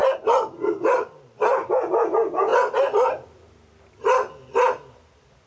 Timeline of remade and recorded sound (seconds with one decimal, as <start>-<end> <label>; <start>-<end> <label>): 0.0-1.7 remade; 1.7-5.5 recorded